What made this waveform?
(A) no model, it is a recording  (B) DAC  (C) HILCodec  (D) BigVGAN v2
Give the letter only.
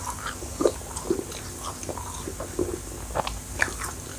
A